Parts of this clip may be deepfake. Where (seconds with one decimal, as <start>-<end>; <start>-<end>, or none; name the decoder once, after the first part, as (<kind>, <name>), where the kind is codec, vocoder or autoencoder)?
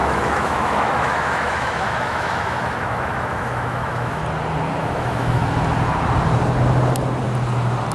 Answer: 0.0-4.2 (autoencoder, DAC-VAE); 4.8-5.4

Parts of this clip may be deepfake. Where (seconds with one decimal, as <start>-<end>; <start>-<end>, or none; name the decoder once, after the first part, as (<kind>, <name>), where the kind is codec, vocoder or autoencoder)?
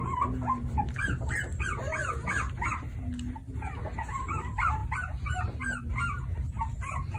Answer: none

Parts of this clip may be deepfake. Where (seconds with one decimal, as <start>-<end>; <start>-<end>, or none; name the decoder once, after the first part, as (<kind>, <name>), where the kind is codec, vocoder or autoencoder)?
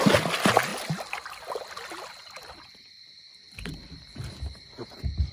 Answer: none